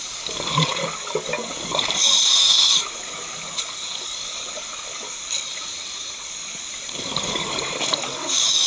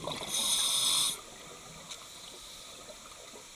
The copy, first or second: first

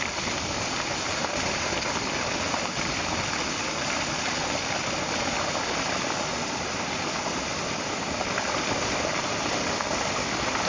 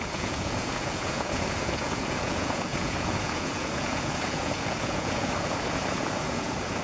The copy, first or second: second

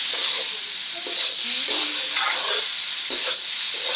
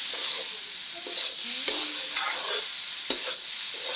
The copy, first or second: first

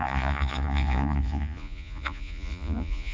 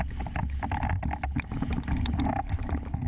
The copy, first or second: first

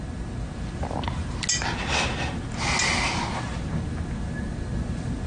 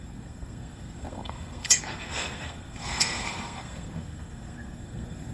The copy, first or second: second